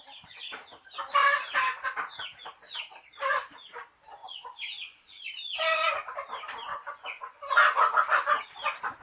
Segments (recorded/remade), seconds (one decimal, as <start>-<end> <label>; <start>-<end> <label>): 0.0-4.2 recorded; 4.2-5.2 remade; 5.2-6.7 recorded; 6.7-7.4 remade; 7.4-9.0 recorded